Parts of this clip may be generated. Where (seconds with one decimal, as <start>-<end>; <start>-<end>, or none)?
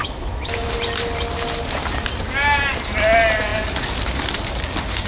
0.0-0.7